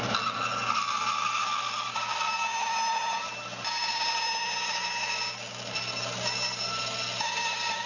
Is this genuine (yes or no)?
yes